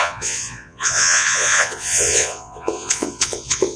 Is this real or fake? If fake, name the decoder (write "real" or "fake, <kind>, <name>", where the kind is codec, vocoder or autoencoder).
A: fake, vocoder, Vocos